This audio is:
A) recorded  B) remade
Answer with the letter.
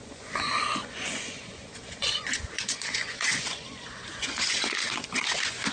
B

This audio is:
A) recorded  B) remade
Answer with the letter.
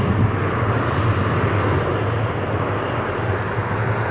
A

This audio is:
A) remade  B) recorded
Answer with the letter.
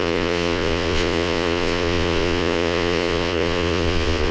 A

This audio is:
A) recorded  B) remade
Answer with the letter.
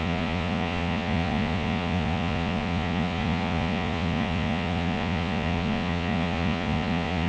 B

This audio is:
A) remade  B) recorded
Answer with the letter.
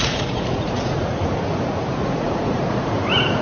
A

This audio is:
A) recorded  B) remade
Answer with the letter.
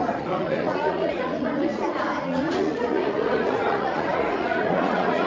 B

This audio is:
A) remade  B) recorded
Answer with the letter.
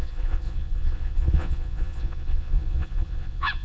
A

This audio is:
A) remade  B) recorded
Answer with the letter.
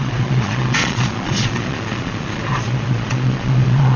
A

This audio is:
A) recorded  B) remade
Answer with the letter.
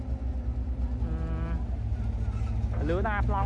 A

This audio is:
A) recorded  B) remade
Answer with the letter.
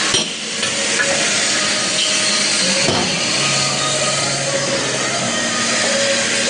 A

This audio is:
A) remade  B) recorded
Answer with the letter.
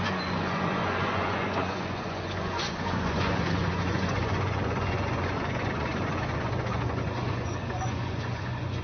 A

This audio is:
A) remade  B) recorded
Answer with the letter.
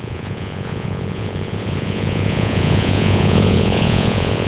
A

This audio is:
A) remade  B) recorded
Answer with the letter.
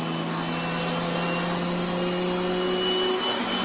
B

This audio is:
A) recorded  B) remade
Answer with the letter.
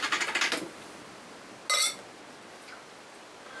A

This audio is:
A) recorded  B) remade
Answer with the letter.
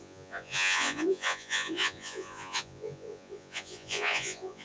B